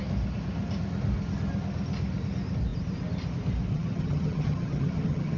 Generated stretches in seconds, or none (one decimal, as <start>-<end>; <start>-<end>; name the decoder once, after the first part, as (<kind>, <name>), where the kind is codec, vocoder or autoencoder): 3.7-5.4 (vocoder, HiFi-GAN)